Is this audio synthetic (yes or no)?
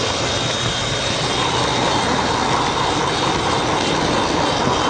no